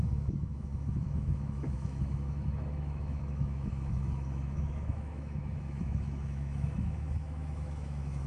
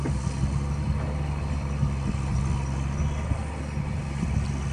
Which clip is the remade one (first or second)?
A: first